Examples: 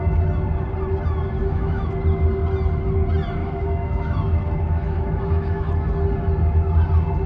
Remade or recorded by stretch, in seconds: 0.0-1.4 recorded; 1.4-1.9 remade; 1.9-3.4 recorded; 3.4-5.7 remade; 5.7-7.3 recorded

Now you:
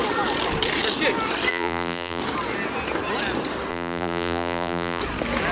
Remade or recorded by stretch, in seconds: 0.0-1.5 recorded; 1.5-2.2 remade; 2.2-3.7 recorded; 3.7-5.0 remade; 5.0-5.5 recorded